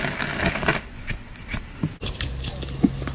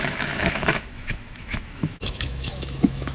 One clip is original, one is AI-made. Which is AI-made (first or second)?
second